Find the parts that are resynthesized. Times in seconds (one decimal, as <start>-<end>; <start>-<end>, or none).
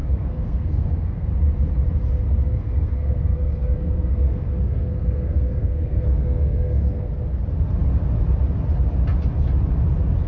0.0-1.3; 2.5-7.1